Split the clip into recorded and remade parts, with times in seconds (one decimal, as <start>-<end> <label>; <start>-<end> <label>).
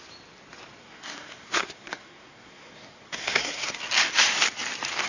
0.0-0.8 recorded; 0.8-3.8 remade; 3.8-5.1 recorded